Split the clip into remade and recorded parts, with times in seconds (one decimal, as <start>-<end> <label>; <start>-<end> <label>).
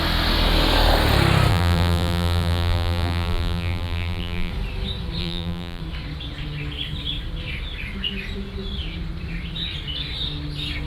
0.0-1.5 recorded; 1.5-4.5 remade; 4.5-5.2 recorded; 5.2-5.8 remade; 5.8-10.9 recorded